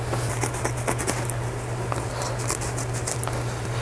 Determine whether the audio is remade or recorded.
recorded